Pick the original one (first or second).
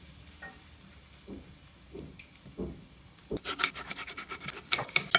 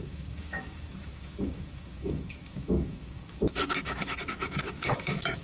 first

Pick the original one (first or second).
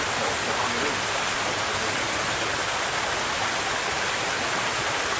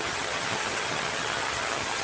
first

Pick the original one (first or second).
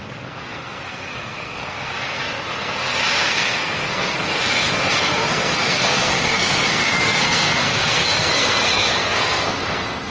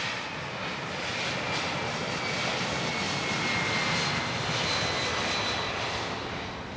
second